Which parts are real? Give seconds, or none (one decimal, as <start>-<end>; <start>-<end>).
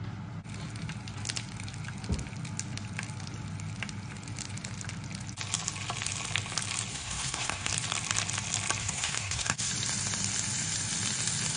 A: 0.0-6.9; 7.7-8.8; 9.7-11.6